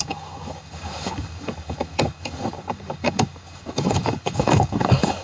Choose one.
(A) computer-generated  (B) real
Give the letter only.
A